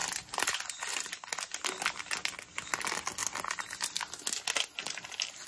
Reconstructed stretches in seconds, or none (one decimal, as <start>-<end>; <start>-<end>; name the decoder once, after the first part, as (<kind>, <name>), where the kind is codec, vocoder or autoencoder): none